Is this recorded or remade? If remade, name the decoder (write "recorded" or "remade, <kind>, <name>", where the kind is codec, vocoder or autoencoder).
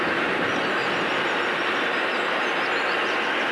recorded